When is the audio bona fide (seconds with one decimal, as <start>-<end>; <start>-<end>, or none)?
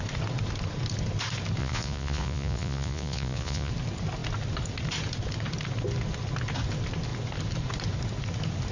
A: 0.0-1.6; 3.7-8.7